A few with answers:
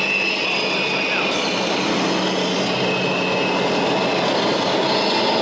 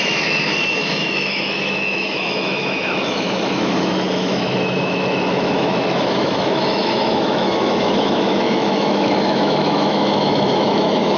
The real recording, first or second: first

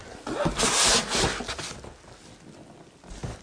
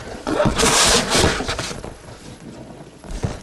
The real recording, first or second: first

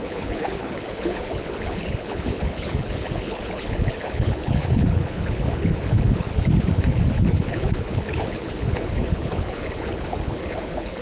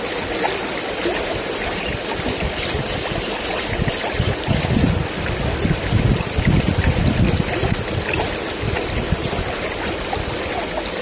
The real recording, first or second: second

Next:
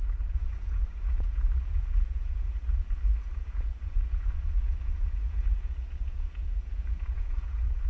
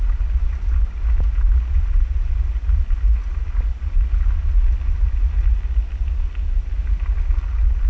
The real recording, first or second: second